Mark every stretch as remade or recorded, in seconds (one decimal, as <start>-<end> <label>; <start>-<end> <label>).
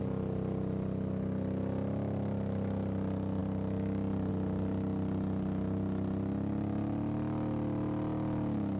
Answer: 0.0-3.4 recorded; 3.4-4.3 remade; 4.3-8.8 recorded